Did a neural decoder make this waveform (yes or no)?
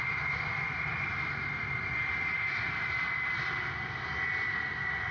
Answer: no